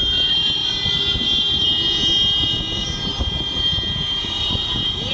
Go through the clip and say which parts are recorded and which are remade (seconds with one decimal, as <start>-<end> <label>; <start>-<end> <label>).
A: 0.0-0.6 remade; 0.6-1.4 recorded; 1.4-5.1 remade